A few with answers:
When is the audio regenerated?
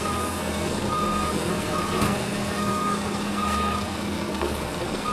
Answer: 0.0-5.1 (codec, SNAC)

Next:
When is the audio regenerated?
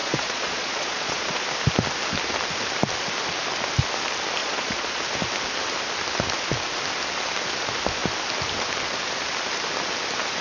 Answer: 0.0-1.4 (vocoder, Vocos); 4.4-5.0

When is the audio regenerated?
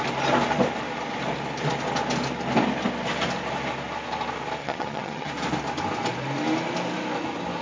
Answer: 4.6-5.3 (vocoder, HiFi-GAN)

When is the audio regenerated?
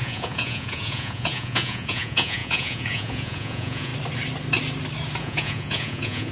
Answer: 0.0-3.9 (vocoder, Vocos); 5.2-6.3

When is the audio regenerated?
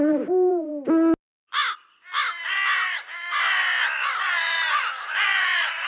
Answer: 0.0-0.7 (vocoder, BigVGAN v2); 4.2-5.9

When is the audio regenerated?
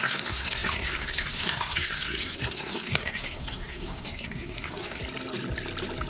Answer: 0.0-5.0 (codec, SNAC)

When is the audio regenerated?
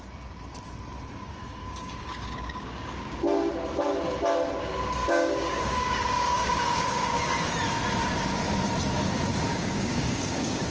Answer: 1.6-3.5 (codec, DAC); 5.0-7.4; 9.5-10.7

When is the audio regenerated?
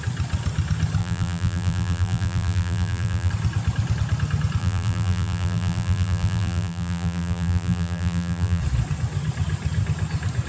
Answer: 1.0-3.3 (vocoder, BigVGAN v2); 4.6-8.6